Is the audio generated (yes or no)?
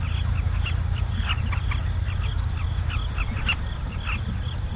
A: no